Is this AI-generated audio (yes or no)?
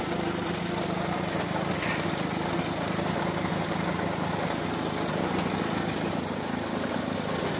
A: no